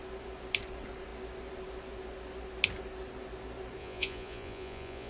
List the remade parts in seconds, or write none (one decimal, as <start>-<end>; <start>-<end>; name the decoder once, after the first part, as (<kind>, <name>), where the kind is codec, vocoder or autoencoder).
3.8-5.1 (vocoder, Vocos)

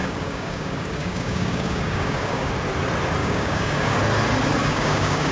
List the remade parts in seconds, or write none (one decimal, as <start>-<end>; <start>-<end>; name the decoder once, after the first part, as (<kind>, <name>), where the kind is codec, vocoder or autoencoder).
0.0-2.5 (codec, DAC); 3.2-4.0; 4.6-5.3

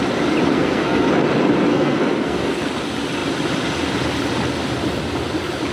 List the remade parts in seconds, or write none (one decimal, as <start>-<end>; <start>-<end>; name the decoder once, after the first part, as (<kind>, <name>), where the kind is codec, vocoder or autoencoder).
0.5-1.1 (codec, SNAC); 1.7-2.7

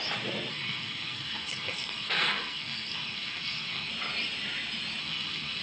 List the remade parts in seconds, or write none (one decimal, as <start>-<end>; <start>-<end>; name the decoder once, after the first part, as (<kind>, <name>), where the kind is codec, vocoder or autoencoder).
0.5-3.9 (codec, SNAC); 5.0-5.6

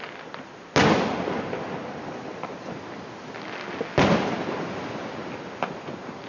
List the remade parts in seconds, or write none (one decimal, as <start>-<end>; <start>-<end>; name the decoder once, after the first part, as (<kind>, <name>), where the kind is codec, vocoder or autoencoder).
none